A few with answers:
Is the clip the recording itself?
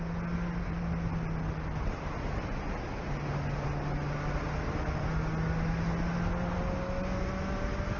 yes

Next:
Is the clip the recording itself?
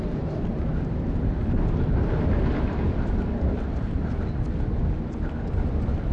yes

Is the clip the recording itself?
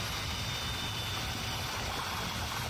yes